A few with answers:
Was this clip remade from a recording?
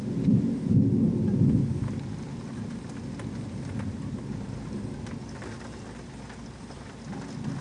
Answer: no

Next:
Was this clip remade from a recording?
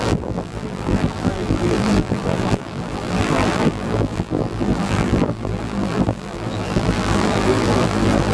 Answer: yes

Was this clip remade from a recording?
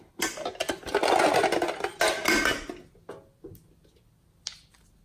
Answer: no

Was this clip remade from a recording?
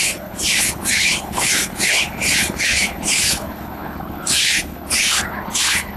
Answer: yes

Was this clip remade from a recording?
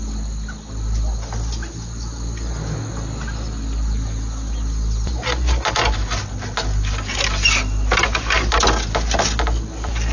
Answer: no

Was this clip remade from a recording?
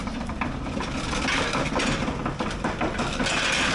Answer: no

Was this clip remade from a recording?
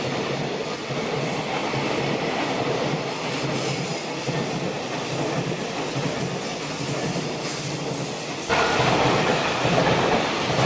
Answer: no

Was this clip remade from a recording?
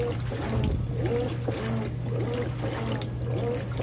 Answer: no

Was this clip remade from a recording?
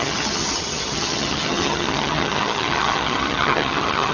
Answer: yes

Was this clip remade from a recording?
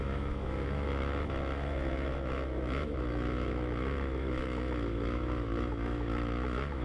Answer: yes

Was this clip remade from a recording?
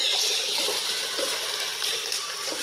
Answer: no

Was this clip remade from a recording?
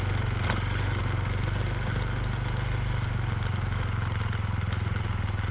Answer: no